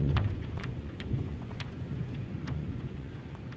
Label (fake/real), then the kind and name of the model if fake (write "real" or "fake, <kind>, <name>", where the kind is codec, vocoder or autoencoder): fake, vocoder, Vocos